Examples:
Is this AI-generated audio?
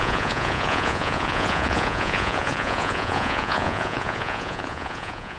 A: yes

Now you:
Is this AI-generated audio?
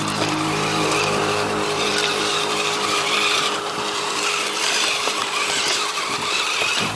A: yes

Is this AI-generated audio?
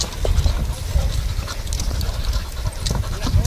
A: no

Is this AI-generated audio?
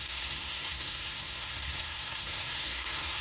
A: yes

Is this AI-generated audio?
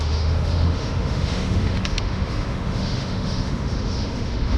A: yes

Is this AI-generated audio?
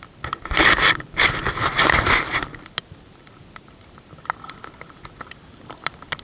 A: no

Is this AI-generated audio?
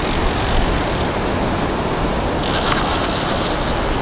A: no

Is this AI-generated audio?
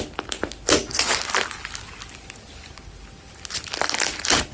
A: no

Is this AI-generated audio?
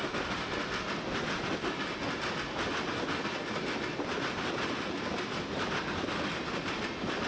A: no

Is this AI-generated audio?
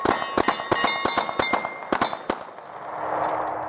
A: no